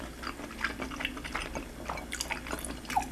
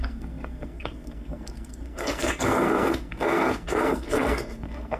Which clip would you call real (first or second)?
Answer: first